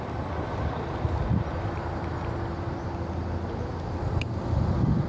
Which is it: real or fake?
real